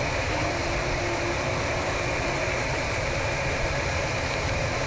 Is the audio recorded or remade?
remade